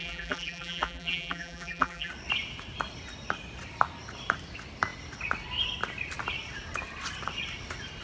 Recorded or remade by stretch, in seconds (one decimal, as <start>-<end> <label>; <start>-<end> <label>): 0.0-2.1 remade; 2.1-8.0 recorded